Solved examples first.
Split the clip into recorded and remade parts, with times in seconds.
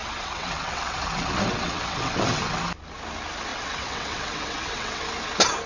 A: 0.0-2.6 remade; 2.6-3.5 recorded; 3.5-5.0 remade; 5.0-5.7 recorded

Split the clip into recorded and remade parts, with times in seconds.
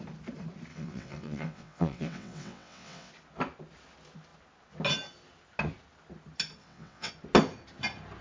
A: 0.0-0.7 recorded; 0.7-3.1 remade; 3.1-6.6 recorded; 6.6-7.1 remade; 7.1-8.2 recorded